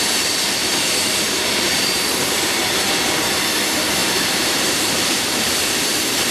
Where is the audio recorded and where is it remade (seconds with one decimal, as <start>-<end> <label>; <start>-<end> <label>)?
0.0-0.6 recorded; 0.6-2.9 remade; 2.9-4.0 recorded; 4.0-6.3 remade